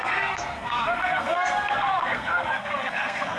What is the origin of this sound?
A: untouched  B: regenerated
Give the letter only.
B